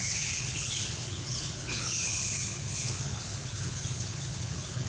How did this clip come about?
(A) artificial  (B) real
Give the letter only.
A